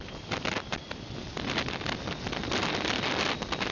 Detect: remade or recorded recorded